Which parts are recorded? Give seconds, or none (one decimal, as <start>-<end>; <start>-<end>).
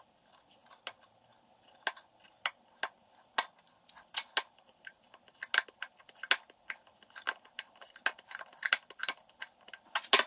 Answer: 0.0-10.3